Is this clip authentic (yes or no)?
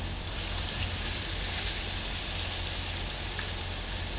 yes